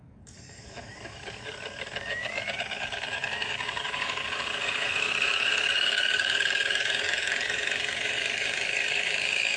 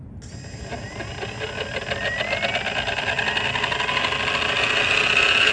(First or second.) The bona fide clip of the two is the second